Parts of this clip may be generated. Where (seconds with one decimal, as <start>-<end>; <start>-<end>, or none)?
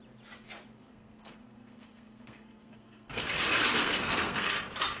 0.7-3.2; 3.7-4.5